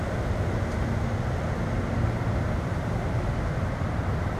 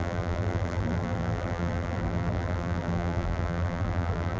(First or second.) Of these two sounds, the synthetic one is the second